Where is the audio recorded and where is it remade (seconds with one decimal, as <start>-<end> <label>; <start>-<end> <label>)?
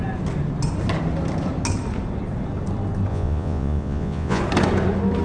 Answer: 0.0-3.1 recorded; 3.1-4.4 remade; 4.4-5.2 recorded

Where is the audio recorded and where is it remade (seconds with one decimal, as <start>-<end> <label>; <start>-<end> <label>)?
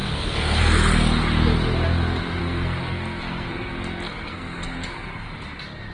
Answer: 0.0-0.6 remade; 0.6-2.4 recorded; 2.4-5.3 remade; 5.3-5.9 recorded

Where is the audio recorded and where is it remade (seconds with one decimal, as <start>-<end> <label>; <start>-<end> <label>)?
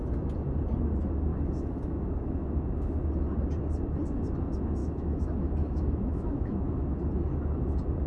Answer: 0.0-1.3 recorded; 1.3-2.5 remade; 2.5-4.8 recorded; 4.8-7.0 remade; 7.0-8.1 recorded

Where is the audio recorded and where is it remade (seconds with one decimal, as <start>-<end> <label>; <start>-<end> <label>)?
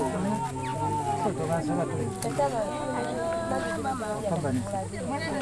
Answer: 0.0-5.4 recorded